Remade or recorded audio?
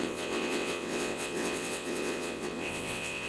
remade